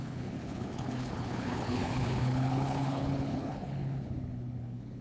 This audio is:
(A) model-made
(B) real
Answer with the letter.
A